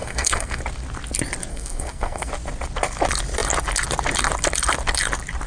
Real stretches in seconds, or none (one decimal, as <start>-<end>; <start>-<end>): 0.6-1.5; 2.3-5.5

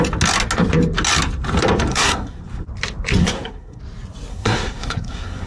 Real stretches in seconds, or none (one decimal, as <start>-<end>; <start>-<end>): 0.0-1.9; 2.4-3.2; 3.8-4.3

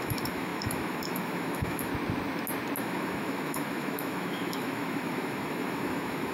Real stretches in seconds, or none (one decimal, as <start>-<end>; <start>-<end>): 1.9-2.8

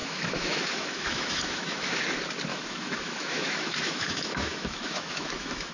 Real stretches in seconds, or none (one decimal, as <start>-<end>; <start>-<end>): 2.0-2.5